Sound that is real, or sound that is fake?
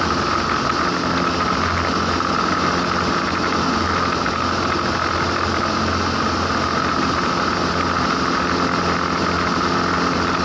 real